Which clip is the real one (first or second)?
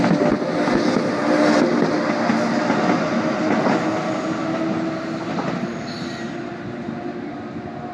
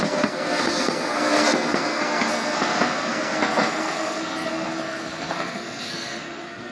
first